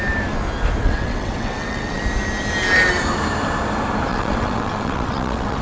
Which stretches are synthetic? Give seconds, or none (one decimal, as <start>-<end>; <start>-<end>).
0.8-2.0; 4.1-5.6